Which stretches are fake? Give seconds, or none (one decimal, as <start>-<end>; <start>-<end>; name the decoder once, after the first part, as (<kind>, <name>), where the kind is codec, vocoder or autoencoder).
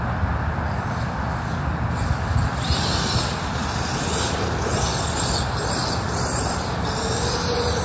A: none